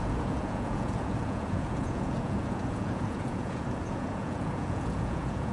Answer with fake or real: fake